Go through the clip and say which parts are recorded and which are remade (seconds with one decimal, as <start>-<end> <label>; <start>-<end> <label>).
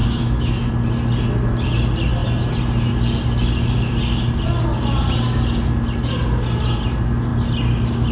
0.0-0.7 remade; 0.7-8.1 recorded